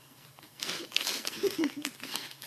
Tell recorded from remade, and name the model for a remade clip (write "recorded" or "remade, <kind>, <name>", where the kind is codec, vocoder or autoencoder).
remade, codec, SNAC